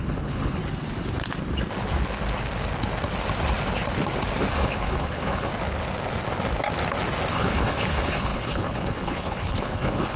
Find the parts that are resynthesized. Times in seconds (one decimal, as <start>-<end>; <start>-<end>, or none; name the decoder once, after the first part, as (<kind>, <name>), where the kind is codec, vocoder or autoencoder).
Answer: 0.0-0.6 (codec, HILCodec); 4.5-5.5; 7.3-10.2